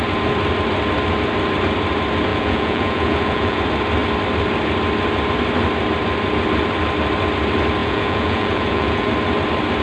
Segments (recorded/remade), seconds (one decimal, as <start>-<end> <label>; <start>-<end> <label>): 0.0-2.3 recorded; 2.3-3.6 remade; 3.6-7.8 recorded; 7.8-9.1 remade; 9.1-9.8 recorded